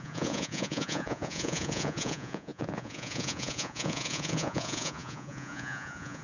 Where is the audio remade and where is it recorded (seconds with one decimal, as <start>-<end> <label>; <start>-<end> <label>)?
0.0-6.2 remade